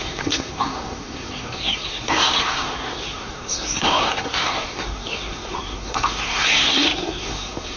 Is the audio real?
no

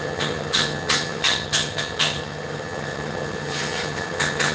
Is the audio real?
no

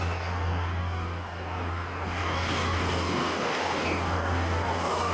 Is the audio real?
no